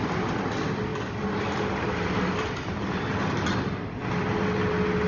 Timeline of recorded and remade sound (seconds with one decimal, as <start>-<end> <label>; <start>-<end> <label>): 0.0-0.9 recorded; 0.9-3.2 remade; 3.2-5.1 recorded